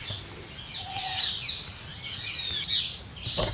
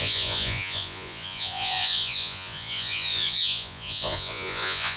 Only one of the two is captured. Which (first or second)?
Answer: first